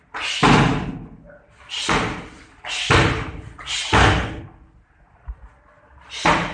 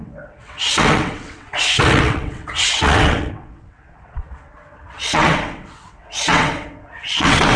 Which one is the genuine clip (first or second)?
first